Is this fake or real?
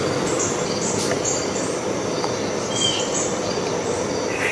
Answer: real